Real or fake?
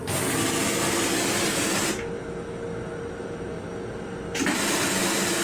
real